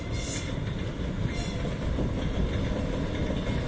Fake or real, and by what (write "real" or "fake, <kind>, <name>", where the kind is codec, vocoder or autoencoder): real